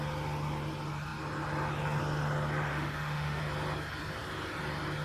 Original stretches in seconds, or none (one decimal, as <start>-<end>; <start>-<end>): 0.0-2.7; 3.4-5.0